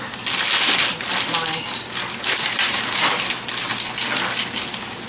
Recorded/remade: recorded